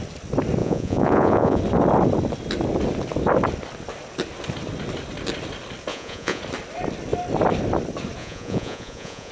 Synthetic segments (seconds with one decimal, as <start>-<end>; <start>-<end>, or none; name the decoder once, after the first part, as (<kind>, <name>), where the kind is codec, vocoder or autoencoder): 0.6-1.6 (vocoder, Vocos); 5.9-6.4; 8.2-9.3